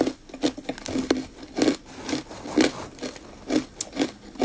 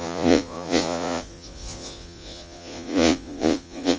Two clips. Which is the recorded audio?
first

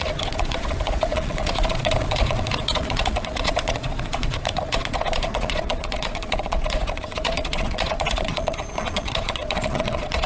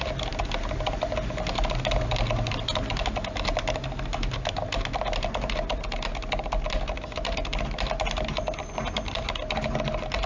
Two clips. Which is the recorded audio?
second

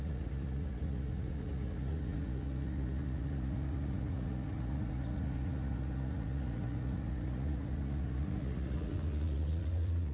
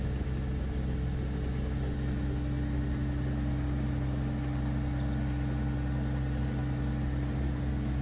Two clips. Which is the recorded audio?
second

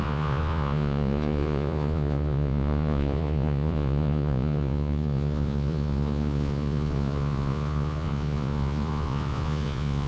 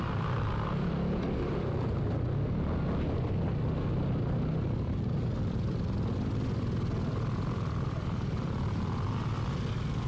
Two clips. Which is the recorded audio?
second